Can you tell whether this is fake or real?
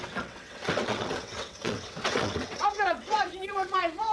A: fake